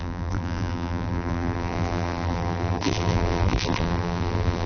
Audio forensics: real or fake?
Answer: fake